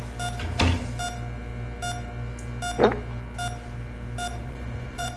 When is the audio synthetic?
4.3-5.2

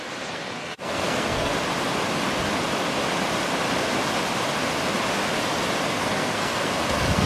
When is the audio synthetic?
0.0-1.5; 5.9-7.3

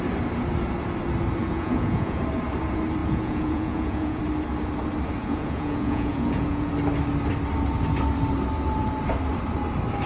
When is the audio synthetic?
1.4-2.2; 3.0-4.2; 5.2-6.7

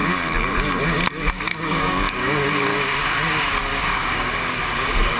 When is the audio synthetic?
1.1-2.7; 3.8-5.2